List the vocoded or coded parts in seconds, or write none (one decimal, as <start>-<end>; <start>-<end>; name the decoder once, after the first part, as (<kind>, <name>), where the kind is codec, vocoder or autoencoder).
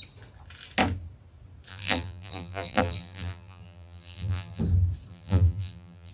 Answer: 1.7-4.6 (vocoder, BigVGAN v2); 5.1-6.1